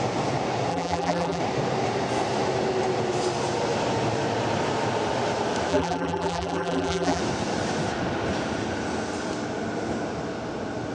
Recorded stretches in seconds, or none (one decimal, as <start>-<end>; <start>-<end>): 0.0-0.7; 1.4-5.7; 7.2-10.9